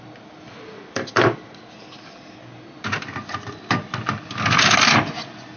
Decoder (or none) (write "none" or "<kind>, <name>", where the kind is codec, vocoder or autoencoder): none